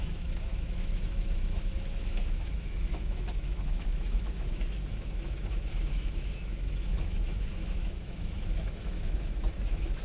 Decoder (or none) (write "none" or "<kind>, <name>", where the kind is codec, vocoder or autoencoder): autoencoder, DAC-VAE